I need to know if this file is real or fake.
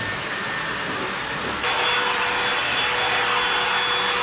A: real